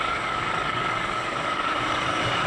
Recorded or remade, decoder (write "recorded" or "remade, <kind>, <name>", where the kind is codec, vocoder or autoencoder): remade, codec, DAC